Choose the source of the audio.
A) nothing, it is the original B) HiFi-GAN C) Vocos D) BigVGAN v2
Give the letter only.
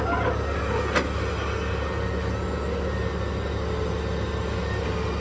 A